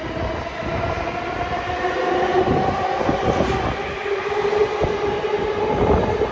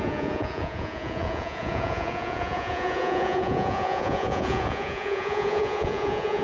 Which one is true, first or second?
first